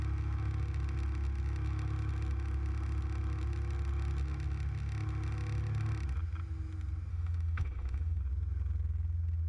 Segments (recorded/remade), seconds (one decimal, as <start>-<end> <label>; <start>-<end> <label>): 0.0-7.1 recorded; 7.1-8.2 remade; 8.2-9.5 recorded